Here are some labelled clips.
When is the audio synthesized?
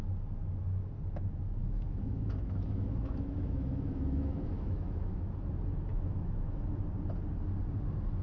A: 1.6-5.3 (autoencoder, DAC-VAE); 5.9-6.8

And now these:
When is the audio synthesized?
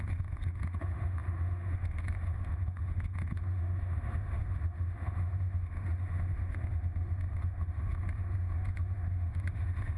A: 0.0-10.0 (autoencoder, DAC-VAE)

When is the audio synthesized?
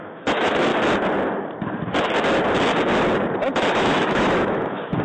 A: 0.0-0.7 (autoencoder, DAC-VAE); 3.7-5.0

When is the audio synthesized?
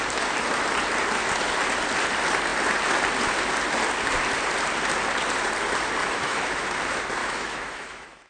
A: 6.0-6.6 (autoencoder, DAC-VAE); 7.2-8.3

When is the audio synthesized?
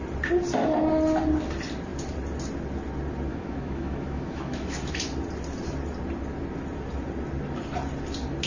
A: 3.3-4.9 (autoencoder, DAC-VAE)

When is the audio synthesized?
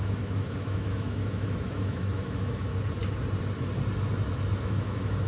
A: 0.0-2.7 (autoencoder, DAC-VAE); 4.6-5.3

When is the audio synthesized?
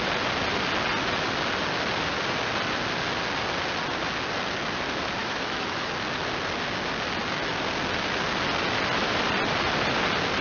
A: 5.2-5.9 (autoencoder, DAC-VAE)